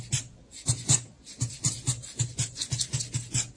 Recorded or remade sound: remade